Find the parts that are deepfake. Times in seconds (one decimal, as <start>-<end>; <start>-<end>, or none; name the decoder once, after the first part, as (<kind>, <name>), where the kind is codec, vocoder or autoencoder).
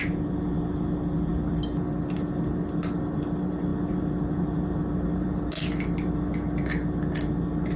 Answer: none